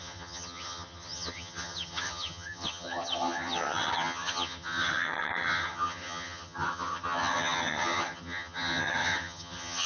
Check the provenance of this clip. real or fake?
fake